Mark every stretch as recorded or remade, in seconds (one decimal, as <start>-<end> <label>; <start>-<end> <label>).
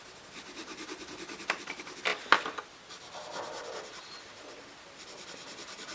0.0-5.9 recorded